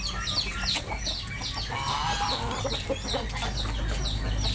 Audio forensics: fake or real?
real